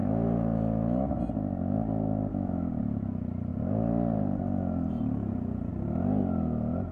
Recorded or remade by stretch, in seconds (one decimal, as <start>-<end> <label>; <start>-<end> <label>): 0.0-1.2 remade; 1.2-2.3 recorded; 2.3-2.8 remade; 2.8-6.9 recorded